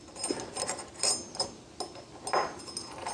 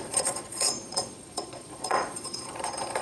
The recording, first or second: first